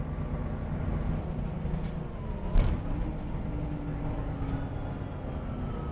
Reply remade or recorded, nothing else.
recorded